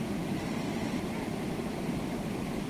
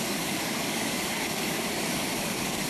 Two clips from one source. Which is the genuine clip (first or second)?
first